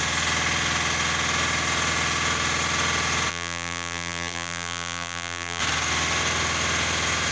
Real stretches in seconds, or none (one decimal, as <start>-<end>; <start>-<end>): 0.0-3.3; 5.6-7.3

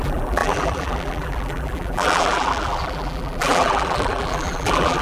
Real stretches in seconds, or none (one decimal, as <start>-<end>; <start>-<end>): none

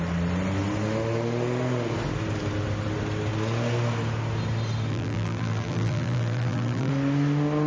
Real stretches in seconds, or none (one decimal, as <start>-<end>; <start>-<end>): 0.0-4.9; 6.9-7.7

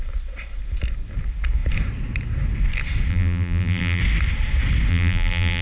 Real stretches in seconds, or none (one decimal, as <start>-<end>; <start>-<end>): 0.0-3.1; 4.0-4.9

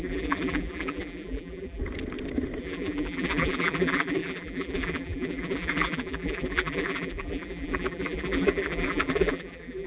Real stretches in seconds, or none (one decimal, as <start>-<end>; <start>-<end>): 1.8-2.6

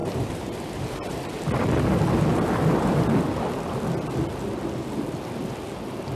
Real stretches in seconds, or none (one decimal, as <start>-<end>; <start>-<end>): 1.4-6.2